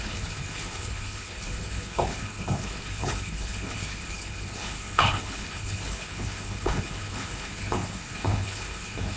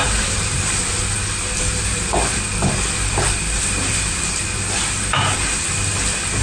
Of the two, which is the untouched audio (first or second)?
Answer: second